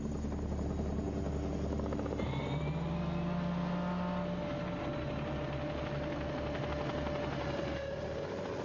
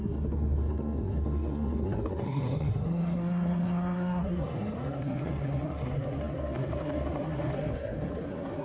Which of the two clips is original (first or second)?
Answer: first